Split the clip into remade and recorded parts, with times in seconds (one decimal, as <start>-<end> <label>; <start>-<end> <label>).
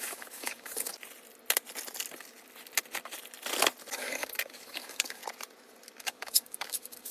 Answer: 0.0-0.9 remade; 0.9-3.9 recorded; 3.9-5.2 remade; 5.2-6.0 recorded; 6.0-7.1 remade